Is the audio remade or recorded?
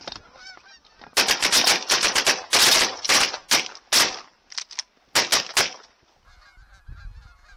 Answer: recorded